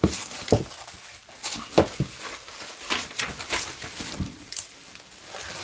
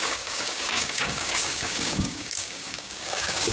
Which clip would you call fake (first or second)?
second